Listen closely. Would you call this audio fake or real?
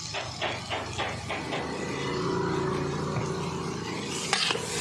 real